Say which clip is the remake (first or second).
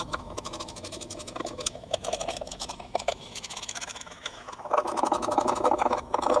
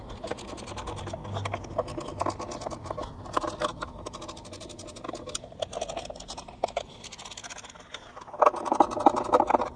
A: first